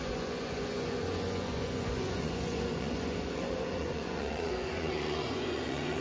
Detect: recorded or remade remade